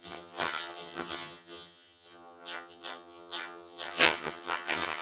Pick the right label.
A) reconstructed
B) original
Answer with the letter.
A